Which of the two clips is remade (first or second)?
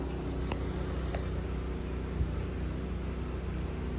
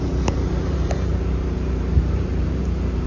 second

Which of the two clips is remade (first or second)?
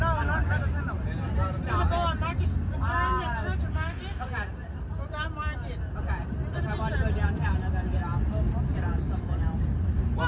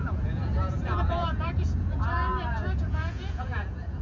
second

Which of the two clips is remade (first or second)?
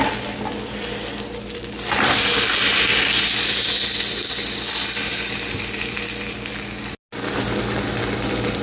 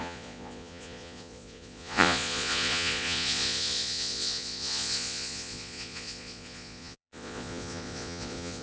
second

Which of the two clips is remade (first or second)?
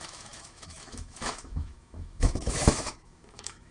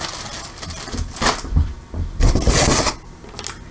first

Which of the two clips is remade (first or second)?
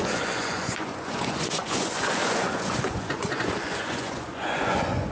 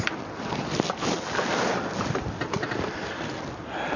first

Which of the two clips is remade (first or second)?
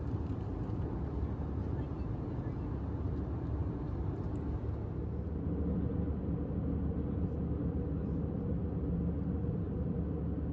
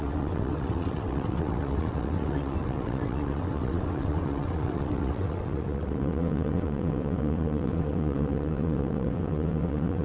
second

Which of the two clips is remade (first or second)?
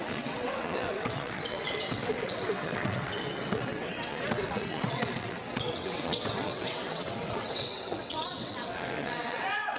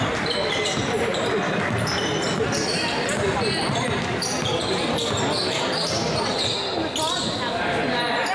first